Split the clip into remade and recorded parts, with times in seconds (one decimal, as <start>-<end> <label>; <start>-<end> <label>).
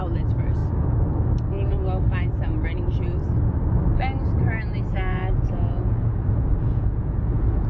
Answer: 0.0-5.1 recorded; 5.1-7.7 remade